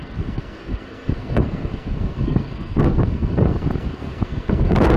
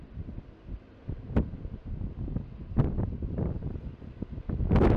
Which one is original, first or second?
second